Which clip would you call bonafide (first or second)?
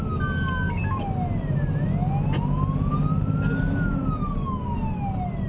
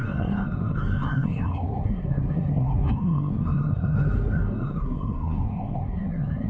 first